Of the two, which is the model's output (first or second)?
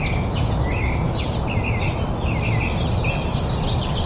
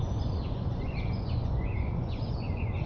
second